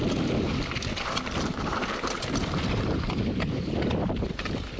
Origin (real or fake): fake